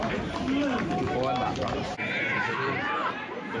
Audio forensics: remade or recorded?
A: recorded